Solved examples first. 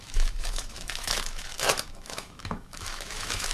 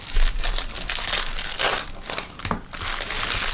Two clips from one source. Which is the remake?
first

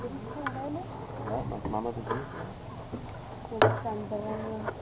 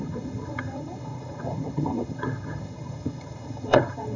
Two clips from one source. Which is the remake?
second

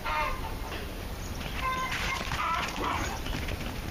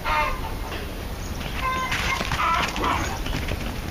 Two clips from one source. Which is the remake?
first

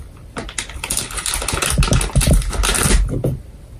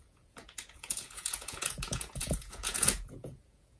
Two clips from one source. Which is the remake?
second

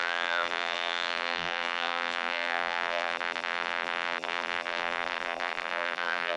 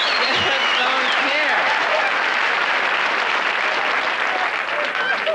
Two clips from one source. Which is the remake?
first